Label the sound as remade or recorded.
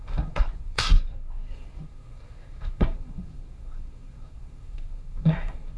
remade